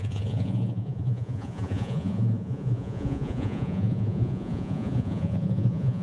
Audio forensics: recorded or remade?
remade